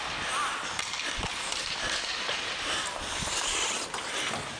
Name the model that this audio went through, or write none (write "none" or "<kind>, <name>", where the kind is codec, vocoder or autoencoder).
none